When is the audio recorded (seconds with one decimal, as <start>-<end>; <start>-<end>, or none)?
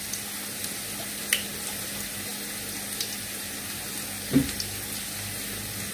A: 0.0-5.9